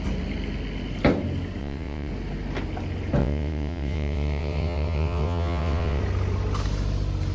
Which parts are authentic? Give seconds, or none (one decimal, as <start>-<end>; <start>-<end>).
0.0-1.6; 2.1-3.2; 6.0-7.3